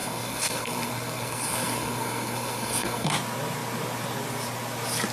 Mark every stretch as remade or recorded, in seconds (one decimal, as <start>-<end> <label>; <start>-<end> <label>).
0.0-3.1 remade; 3.1-5.1 recorded